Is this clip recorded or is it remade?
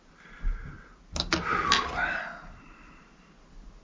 recorded